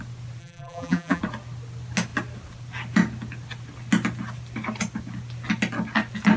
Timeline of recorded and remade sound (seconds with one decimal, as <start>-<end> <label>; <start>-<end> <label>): 0.0-0.4 recorded; 0.4-1.2 remade; 1.2-6.4 recorded